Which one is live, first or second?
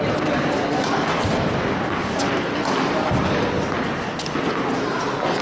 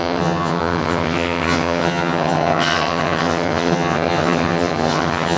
first